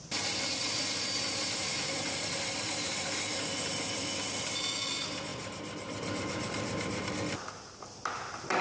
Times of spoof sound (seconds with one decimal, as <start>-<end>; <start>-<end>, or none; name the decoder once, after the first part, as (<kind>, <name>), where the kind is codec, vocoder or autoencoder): 1.7-2.9 (vocoder, BigVGAN v2); 5.3-7.1